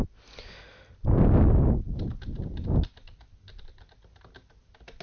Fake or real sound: real